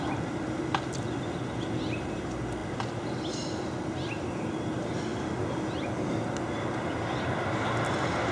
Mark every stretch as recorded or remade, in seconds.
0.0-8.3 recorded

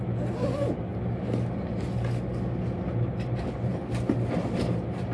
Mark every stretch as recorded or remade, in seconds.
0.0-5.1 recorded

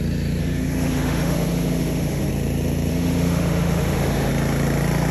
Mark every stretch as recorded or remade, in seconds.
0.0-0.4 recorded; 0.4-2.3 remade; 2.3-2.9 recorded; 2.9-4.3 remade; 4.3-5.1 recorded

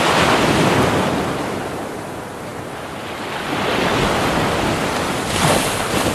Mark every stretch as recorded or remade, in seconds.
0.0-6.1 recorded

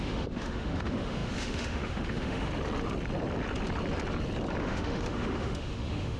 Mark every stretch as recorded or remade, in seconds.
0.0-2.5 remade; 2.5-4.6 recorded; 4.6-6.2 remade

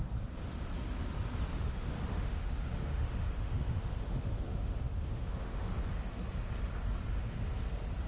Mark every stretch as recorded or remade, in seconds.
0.0-1.5 recorded; 1.5-5.7 remade; 5.7-8.1 recorded

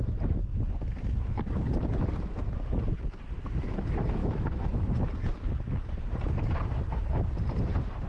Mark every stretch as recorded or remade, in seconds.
0.0-4.2 recorded; 4.2-4.8 remade; 4.8-8.1 recorded